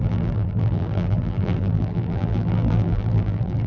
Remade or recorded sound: remade